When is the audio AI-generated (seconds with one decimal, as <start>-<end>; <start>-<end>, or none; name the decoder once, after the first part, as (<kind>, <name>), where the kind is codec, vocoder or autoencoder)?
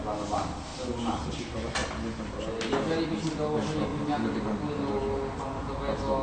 none